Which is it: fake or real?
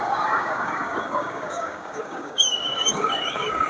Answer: fake